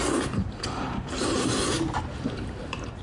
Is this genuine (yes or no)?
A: no